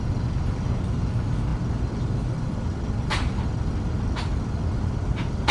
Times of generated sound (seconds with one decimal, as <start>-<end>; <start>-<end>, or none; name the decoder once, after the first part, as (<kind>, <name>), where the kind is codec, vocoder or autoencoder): none